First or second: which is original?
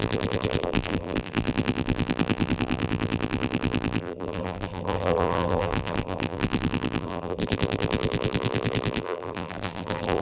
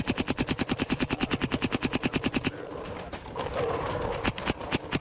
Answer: second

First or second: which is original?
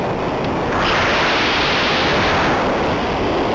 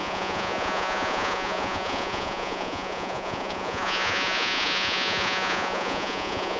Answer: first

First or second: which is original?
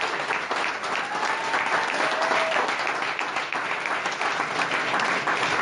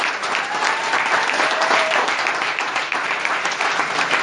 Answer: first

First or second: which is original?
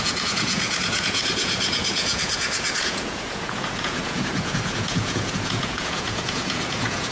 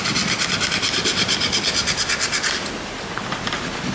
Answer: second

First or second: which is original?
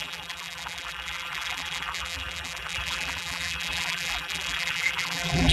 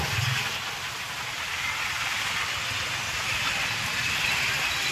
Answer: second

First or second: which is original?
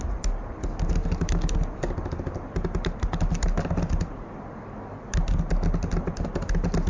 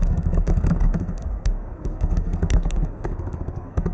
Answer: first